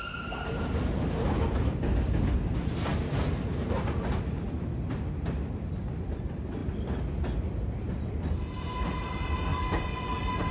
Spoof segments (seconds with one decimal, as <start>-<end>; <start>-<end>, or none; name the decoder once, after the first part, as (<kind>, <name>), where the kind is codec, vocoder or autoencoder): none